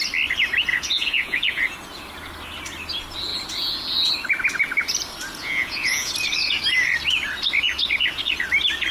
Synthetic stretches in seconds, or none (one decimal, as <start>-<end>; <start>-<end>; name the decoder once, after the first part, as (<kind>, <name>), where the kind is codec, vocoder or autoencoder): 0.7-1.6 (vocoder, Vocos); 5.4-6.1